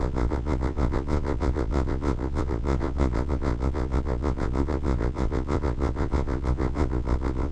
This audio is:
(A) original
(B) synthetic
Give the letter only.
B